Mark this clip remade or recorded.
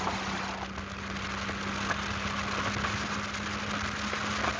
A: recorded